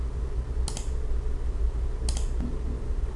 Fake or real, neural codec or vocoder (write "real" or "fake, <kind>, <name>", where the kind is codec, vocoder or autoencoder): real